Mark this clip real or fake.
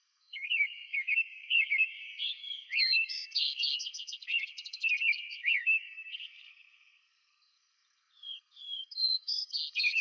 fake